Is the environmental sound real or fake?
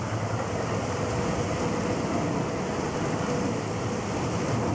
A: real